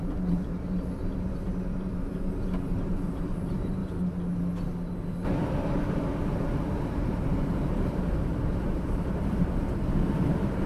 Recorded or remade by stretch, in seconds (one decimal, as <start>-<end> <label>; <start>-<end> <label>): 0.0-3.8 remade; 3.8-6.4 recorded; 6.4-10.7 remade